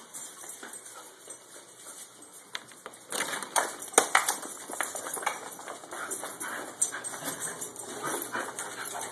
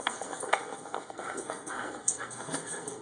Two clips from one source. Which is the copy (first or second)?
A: second